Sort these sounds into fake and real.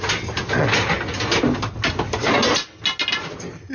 real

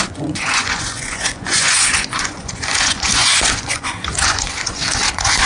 fake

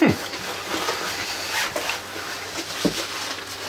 real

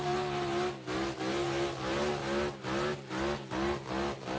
real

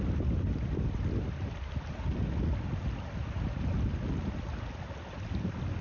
real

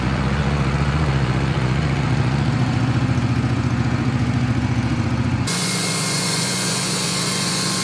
fake